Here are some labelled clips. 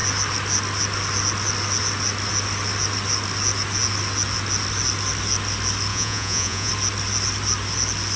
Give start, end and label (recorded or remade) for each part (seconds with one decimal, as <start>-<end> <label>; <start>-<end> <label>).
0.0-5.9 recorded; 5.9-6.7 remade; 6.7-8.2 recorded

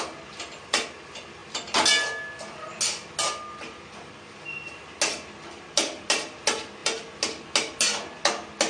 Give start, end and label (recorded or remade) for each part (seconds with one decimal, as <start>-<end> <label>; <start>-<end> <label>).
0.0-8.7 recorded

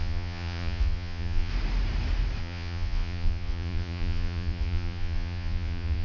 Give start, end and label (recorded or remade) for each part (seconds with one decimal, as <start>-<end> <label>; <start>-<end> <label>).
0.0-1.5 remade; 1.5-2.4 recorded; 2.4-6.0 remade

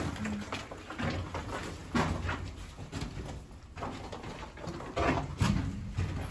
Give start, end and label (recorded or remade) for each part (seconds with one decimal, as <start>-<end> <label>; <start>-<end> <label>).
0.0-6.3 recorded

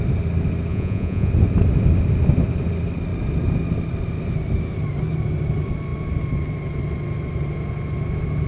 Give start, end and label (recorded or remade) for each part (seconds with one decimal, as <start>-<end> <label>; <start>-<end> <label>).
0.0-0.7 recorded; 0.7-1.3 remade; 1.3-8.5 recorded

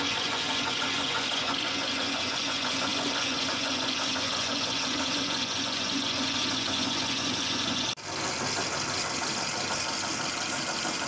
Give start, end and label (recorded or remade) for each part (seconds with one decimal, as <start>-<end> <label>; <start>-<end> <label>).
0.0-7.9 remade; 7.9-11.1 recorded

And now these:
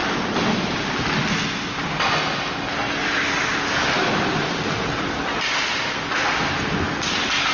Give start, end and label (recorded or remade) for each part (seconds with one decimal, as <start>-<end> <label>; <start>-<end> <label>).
0.0-7.5 recorded

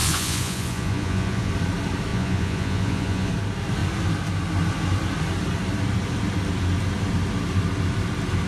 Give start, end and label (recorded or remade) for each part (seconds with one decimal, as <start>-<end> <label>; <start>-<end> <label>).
0.0-1.5 remade; 1.5-2.1 recorded; 2.1-3.3 remade; 3.3-8.5 recorded